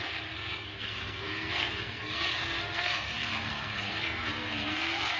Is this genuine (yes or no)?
no